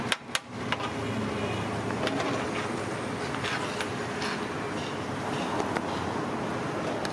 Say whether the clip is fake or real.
real